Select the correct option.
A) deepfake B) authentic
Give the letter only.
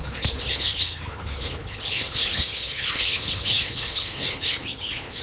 A